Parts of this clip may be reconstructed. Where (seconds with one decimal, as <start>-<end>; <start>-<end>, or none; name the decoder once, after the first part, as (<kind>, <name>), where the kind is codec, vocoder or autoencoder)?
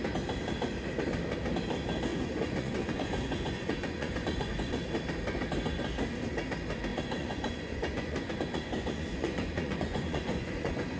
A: 2.1-4.8 (vocoder, Vocos); 6.9-11.0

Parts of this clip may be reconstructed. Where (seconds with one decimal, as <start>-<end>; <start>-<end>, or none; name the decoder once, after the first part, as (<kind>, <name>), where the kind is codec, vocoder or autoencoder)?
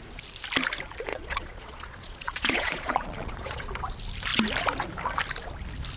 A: 1.1-3.7 (vocoder, Vocos)